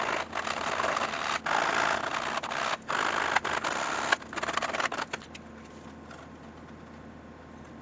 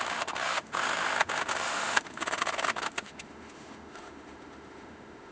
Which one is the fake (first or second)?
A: second